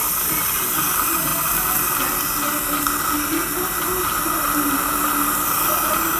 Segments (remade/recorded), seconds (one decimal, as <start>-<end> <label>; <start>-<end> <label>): 0.0-6.2 recorded